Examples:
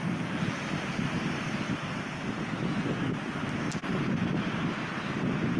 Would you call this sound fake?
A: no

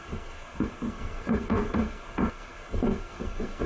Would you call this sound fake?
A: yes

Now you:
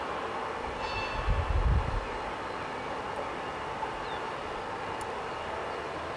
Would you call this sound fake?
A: no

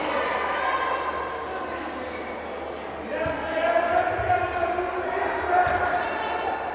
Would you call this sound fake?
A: no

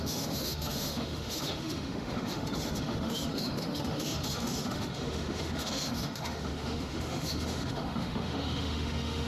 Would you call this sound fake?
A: yes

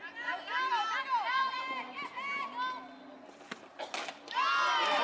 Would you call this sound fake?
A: no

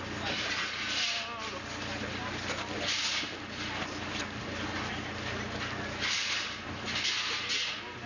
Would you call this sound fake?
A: no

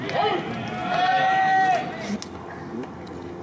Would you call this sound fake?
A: no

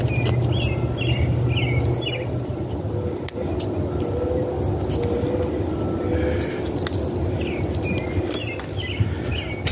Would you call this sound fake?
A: no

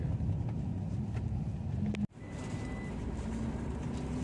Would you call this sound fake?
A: no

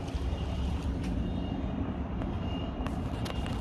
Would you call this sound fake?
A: no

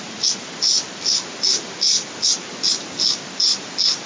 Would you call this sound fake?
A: no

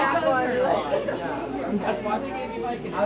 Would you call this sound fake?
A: no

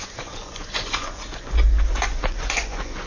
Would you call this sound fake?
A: yes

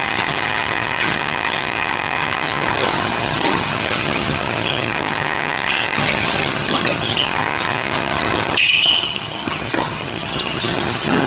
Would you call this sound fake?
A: yes